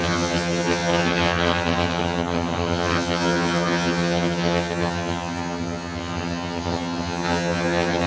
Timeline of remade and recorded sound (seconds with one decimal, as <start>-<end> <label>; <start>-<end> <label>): 0.0-8.1 remade